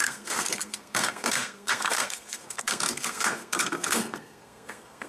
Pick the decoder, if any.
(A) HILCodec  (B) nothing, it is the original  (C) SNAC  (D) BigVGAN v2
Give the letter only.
C